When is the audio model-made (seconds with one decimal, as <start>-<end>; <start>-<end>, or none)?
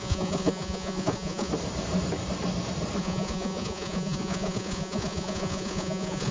0.0-1.5; 3.0-6.3